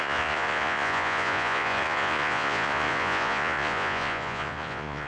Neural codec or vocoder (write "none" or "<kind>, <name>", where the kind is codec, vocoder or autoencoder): vocoder, Vocos